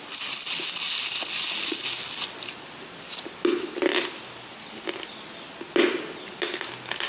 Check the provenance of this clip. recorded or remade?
recorded